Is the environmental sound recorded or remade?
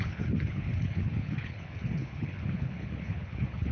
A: remade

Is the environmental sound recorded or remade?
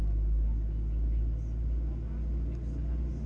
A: recorded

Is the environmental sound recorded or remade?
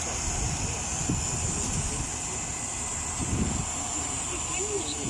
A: recorded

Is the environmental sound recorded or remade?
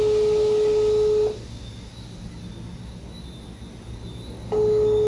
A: recorded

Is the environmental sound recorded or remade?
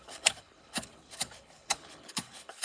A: remade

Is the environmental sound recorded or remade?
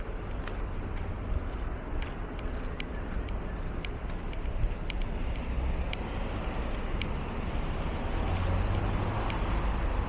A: recorded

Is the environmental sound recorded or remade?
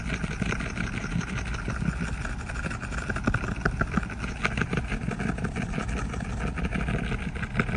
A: recorded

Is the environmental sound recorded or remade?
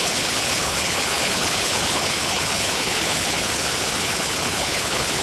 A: remade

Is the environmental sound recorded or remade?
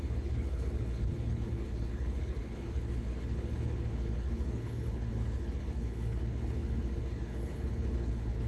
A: remade